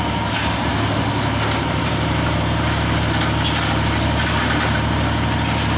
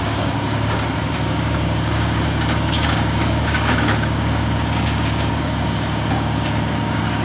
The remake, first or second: second